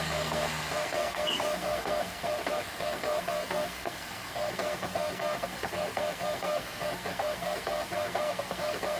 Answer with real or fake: fake